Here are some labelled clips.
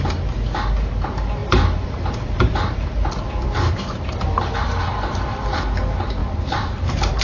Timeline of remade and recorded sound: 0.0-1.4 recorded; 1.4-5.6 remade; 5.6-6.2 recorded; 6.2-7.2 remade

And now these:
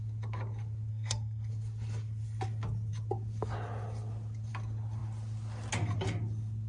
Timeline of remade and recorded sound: 0.0-0.9 recorded; 0.9-1.5 remade; 1.5-6.7 recorded

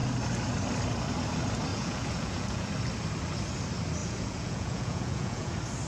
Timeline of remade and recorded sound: 0.0-1.7 recorded; 1.7-2.7 remade; 2.7-4.0 recorded; 4.0-5.5 remade; 5.5-5.9 recorded

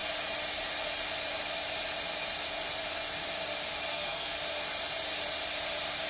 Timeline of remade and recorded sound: 0.0-3.9 recorded; 3.9-4.4 remade; 4.4-6.1 recorded

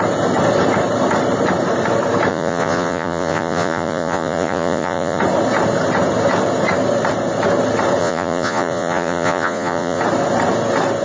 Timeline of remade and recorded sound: 0.0-2.3 recorded; 2.3-5.2 remade; 5.2-8.0 recorded; 8.0-10.0 remade; 10.0-11.0 recorded